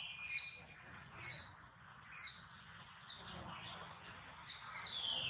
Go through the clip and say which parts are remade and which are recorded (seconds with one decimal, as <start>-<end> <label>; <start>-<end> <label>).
0.0-1.0 recorded; 1.0-4.2 remade; 4.2-5.3 recorded